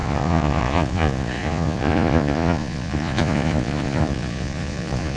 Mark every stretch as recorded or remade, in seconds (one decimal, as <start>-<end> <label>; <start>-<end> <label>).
0.0-5.2 remade